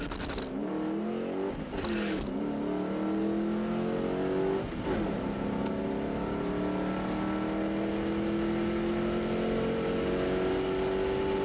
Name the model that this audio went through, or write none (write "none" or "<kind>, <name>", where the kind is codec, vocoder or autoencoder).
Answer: none